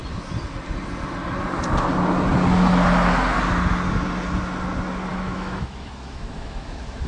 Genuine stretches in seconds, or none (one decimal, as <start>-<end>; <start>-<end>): 0.0-5.1